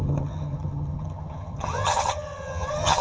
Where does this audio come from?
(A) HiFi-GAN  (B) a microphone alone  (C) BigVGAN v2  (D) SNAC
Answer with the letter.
A